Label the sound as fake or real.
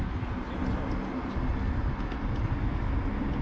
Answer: real